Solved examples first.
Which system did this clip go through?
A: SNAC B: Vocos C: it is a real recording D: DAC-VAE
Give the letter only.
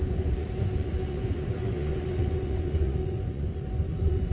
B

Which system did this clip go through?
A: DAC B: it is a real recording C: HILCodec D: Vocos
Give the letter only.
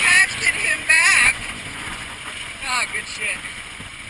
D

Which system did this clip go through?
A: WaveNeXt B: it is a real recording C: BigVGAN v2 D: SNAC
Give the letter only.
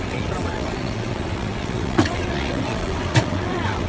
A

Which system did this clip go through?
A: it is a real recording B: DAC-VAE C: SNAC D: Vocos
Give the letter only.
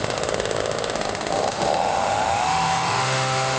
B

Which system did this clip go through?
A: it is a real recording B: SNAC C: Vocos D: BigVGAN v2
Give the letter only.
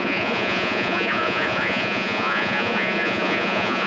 C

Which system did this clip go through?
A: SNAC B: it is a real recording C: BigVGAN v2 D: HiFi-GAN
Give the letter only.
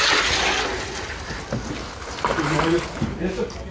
B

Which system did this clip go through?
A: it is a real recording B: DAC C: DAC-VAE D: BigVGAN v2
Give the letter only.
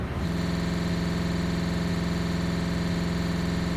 D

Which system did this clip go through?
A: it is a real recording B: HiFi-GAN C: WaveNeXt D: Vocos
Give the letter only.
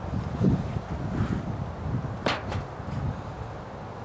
A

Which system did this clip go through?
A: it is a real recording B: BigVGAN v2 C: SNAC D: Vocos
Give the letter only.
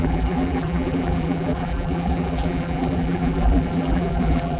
B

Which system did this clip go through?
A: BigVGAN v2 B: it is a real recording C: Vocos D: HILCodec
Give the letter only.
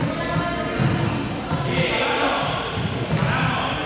B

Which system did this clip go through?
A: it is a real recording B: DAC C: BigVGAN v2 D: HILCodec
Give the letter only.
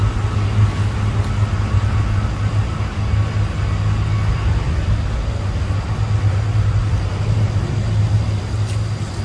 A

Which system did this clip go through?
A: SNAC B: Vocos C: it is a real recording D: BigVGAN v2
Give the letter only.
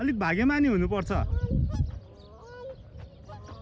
C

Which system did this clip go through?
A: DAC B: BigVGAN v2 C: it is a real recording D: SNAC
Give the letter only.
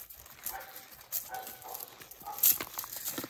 C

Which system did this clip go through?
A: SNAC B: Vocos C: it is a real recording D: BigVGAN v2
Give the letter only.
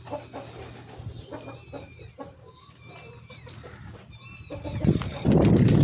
C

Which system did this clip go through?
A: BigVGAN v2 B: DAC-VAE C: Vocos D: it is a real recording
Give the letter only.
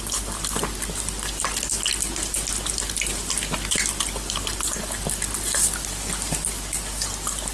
D